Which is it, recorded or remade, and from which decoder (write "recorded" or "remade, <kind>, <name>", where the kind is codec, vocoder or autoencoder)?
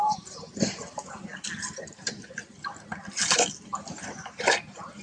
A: recorded